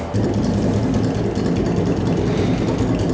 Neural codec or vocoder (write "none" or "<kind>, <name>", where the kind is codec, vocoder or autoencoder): none